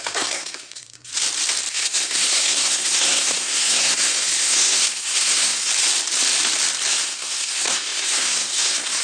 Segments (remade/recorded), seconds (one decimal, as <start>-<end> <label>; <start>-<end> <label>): 0.0-1.1 remade; 1.1-1.7 recorded; 1.7-5.7 remade; 5.7-6.9 recorded; 6.9-9.0 remade